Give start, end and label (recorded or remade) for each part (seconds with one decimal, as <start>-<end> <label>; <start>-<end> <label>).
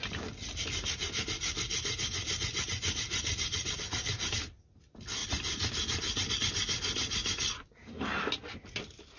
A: 0.0-5.2 recorded; 5.2-6.3 remade; 6.3-9.2 recorded